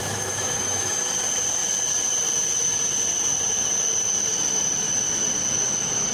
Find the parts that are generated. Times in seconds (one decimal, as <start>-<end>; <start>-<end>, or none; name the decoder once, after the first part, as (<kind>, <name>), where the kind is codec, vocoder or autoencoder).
0.0-1.0 (autoencoder, DAC-VAE)